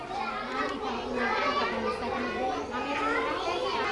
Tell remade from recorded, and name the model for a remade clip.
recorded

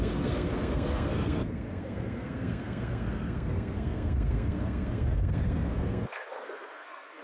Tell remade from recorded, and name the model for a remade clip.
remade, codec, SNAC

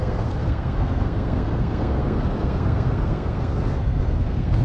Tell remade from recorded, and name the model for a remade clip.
remade, codec, SNAC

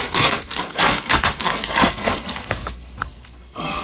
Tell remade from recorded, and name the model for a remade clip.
remade, codec, SNAC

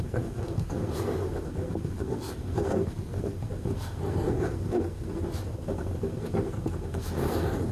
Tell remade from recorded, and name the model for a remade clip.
remade, codec, SNAC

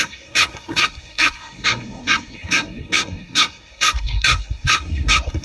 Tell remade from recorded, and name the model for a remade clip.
remade, codec, SNAC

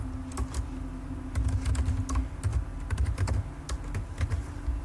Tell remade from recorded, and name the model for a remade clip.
recorded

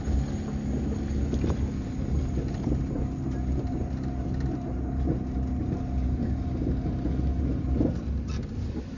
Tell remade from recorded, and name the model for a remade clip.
recorded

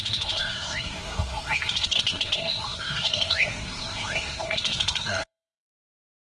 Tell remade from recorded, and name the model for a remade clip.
remade, codec, SNAC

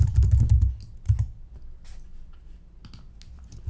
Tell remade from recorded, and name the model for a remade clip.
recorded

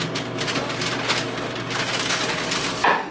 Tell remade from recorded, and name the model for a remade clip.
recorded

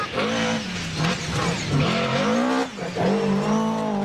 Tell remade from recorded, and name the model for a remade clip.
recorded